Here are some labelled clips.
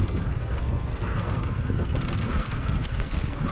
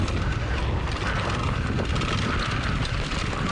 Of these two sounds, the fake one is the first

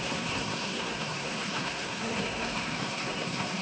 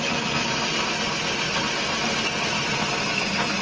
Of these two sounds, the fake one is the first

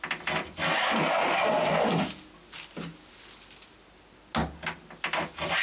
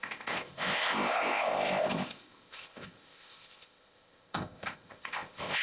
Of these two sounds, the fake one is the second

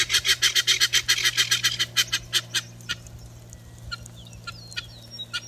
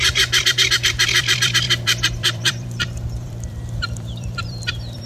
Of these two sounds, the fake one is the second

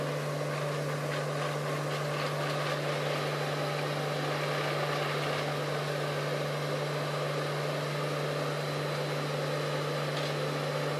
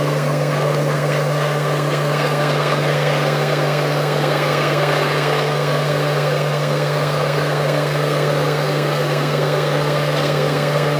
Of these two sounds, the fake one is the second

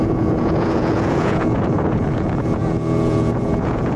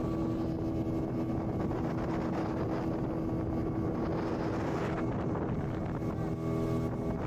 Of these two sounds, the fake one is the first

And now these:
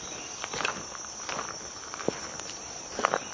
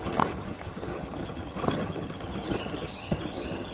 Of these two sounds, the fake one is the second